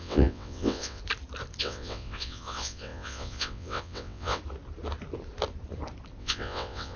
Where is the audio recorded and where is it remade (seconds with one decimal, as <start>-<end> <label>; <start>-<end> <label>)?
0.0-1.0 remade; 1.0-1.6 recorded; 1.6-4.4 remade; 4.4-6.2 recorded; 6.2-7.0 remade